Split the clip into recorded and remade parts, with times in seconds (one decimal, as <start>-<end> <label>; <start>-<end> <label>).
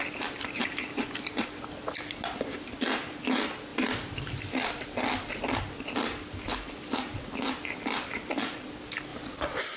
0.0-3.7 recorded; 3.7-4.4 remade; 4.4-9.1 recorded; 9.1-9.8 remade